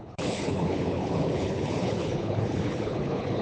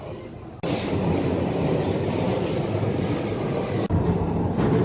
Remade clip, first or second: first